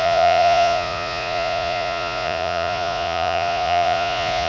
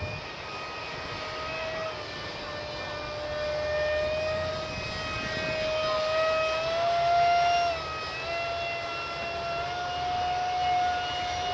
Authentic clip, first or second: second